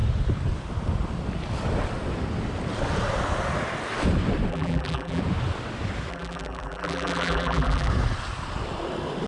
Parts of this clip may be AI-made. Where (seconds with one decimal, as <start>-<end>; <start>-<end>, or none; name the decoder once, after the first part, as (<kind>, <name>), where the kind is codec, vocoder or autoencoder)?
4.5-5.2 (vocoder, BigVGAN v2); 6.1-7.9